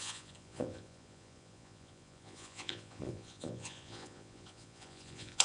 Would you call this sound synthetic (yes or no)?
yes